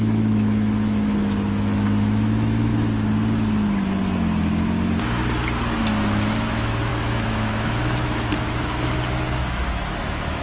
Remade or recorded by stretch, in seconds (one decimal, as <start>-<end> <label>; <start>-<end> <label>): 0.0-2.7 remade; 2.7-5.8 recorded; 5.8-10.4 remade